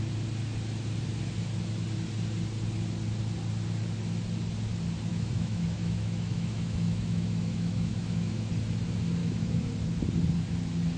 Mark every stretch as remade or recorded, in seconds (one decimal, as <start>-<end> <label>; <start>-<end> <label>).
0.0-5.1 recorded; 5.1-8.5 remade; 8.5-9.2 recorded; 9.2-9.7 remade; 9.7-11.0 recorded